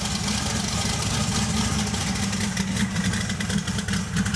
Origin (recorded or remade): recorded